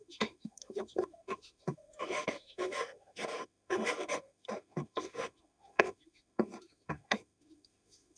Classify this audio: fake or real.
fake